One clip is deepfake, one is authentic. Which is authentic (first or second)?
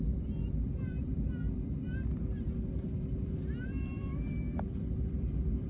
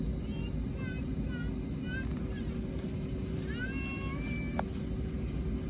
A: second